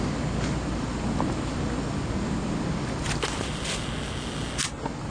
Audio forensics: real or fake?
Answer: real